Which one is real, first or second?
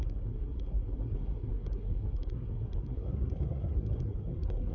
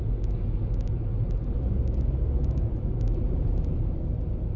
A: second